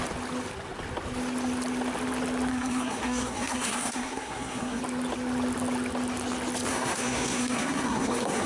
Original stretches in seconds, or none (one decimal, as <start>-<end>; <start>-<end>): 0.0-2.5; 4.8-6.7